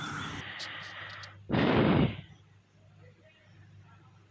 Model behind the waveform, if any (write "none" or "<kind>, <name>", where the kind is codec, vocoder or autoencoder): none